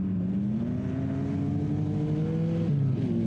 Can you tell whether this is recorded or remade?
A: recorded